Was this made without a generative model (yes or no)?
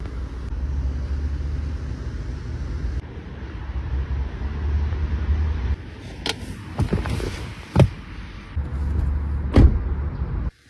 yes